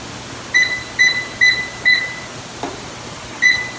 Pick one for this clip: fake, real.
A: real